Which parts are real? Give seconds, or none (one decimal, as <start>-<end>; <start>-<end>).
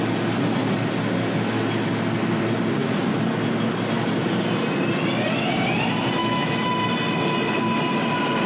0.0-6.2; 6.7-8.5